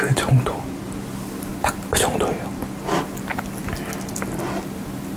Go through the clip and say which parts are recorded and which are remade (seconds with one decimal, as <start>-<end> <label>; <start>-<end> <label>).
0.0-5.2 recorded